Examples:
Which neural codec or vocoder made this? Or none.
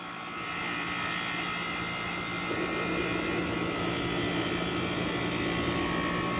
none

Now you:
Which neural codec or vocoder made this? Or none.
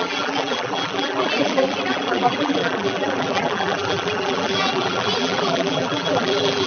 vocoder, BigVGAN v2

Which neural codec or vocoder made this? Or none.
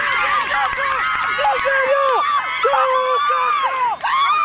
none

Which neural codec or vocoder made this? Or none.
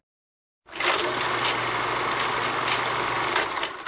none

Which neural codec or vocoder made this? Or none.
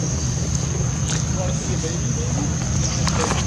none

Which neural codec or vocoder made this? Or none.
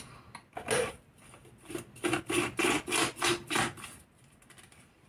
none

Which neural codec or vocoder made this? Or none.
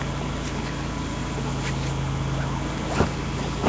none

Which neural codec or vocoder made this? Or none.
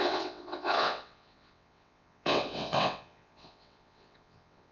vocoder, WaveNeXt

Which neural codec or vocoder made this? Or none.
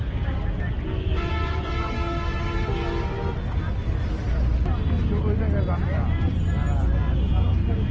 none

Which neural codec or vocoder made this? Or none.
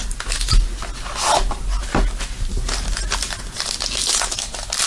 none